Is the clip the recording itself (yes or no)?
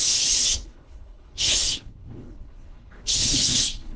no